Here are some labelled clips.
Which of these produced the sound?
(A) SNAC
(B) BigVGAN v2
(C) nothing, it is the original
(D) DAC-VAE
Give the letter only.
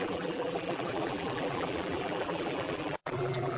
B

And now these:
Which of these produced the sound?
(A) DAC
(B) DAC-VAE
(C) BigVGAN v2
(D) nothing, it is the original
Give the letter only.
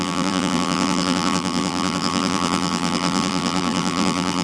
C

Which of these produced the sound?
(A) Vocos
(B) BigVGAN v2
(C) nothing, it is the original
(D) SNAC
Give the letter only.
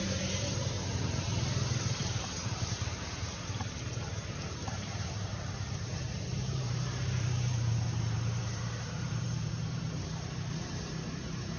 B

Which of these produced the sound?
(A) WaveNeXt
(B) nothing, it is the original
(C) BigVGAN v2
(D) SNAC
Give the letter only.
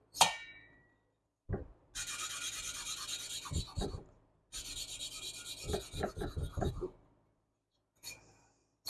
B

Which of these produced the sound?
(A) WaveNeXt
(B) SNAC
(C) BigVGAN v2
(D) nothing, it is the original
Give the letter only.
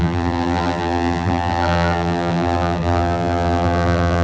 C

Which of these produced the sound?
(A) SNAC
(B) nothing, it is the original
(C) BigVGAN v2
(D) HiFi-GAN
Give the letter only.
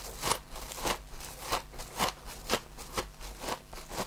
B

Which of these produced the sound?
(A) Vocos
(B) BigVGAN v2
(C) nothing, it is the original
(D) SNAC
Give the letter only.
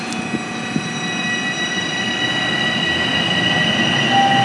C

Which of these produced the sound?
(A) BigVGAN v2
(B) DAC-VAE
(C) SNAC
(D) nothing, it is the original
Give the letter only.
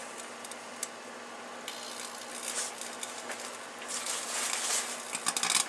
D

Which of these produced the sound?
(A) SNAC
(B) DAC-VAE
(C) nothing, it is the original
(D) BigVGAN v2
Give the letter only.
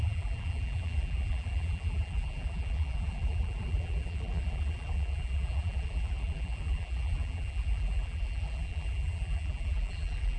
D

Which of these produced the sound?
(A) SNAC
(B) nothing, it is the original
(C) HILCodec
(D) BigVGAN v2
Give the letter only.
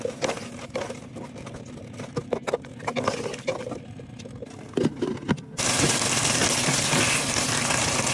B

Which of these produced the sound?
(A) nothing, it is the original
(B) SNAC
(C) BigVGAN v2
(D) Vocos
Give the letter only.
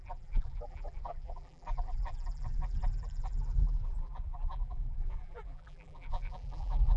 C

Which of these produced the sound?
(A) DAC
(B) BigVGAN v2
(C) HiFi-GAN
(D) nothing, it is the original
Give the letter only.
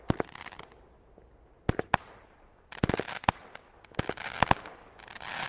D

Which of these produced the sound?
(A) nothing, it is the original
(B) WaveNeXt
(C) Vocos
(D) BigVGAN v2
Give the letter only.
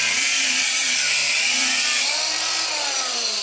D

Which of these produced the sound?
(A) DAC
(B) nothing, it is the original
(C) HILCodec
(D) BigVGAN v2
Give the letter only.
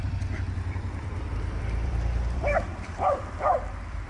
D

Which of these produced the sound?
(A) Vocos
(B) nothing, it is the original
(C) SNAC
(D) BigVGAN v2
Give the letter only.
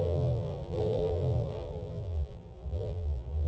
D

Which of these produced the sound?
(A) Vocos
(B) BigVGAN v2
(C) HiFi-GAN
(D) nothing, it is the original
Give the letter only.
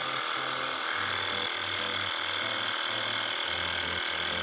D